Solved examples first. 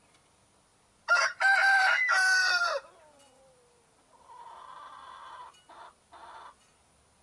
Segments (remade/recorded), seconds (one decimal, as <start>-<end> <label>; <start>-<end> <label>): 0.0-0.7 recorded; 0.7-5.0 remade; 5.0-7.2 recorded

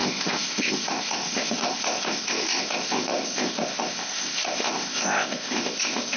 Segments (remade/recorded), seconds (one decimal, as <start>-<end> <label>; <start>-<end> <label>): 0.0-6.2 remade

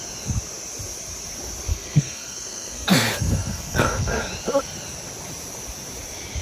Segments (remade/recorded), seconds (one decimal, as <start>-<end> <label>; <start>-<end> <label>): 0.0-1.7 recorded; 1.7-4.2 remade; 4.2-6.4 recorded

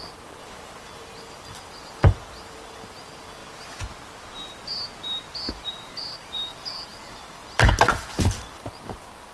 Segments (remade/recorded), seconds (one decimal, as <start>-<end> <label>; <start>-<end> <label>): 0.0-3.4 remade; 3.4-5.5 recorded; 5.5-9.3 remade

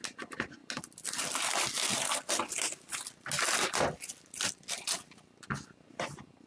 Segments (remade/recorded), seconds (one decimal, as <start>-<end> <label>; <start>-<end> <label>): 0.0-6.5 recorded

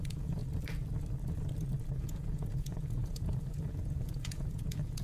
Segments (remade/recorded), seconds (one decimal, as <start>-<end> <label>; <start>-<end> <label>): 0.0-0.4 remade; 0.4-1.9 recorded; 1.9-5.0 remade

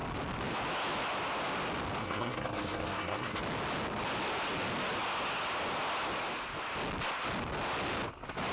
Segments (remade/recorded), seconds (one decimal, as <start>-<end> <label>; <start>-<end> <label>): 0.0-2.0 recorded; 2.0-3.4 remade; 3.4-8.5 recorded

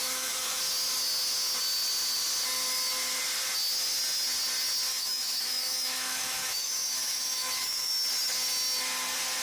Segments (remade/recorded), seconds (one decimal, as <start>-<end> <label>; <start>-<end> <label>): 0.0-0.6 remade; 0.6-4.9 recorded; 4.9-7.9 remade; 7.9-9.4 recorded